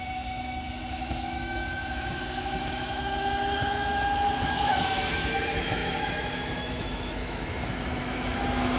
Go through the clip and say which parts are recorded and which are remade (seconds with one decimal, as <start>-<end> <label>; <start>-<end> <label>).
0.0-8.8 remade